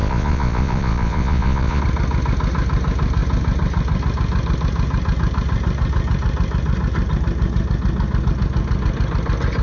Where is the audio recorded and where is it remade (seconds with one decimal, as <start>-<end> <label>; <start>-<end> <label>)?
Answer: 0.0-1.8 remade; 1.8-9.6 recorded